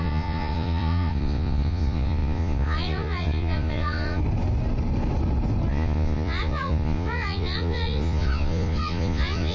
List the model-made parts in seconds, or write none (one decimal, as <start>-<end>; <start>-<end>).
0.0-4.2; 5.7-9.5